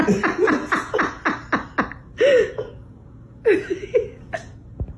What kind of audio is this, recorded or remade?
recorded